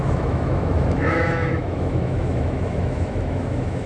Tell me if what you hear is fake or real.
fake